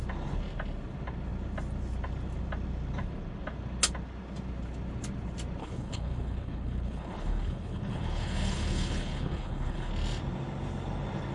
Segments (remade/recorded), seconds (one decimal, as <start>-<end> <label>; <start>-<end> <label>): 0.0-5.6 recorded; 5.6-9.9 remade; 9.9-11.3 recorded